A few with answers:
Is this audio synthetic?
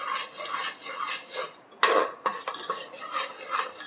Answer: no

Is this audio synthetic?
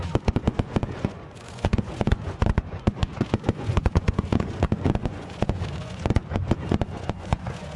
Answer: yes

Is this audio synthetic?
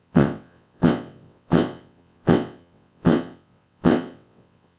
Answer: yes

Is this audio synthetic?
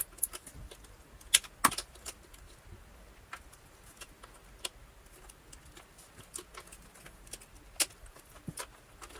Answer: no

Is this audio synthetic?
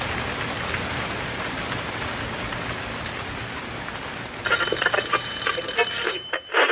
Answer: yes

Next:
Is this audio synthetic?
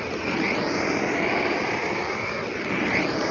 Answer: no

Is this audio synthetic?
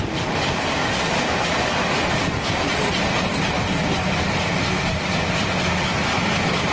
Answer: no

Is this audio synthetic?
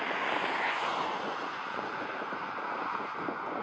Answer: yes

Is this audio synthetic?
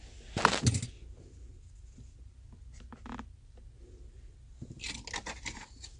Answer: no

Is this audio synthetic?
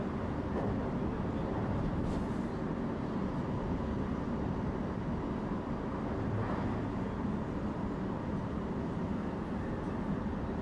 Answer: no